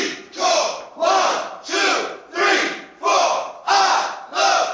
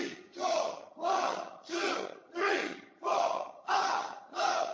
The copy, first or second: second